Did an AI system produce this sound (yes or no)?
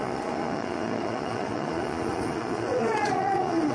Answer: yes